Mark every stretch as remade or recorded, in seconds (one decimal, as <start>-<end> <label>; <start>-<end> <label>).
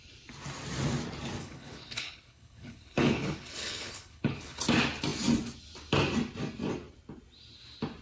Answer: 0.0-1.4 recorded; 1.4-4.6 remade; 4.6-8.0 recorded